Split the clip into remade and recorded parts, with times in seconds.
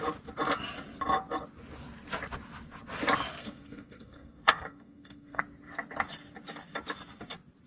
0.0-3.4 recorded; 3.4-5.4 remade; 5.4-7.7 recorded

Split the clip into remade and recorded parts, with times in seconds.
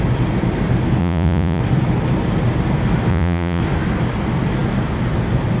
0.0-1.0 recorded; 1.0-1.6 remade; 1.6-3.1 recorded; 3.1-3.6 remade; 3.6-5.6 recorded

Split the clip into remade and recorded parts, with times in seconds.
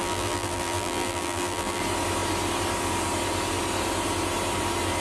0.0-1.8 remade; 1.8-5.0 recorded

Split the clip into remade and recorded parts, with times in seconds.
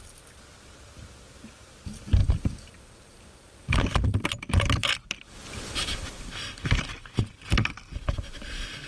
0.0-2.2 recorded; 2.2-7.2 remade; 7.2-8.9 recorded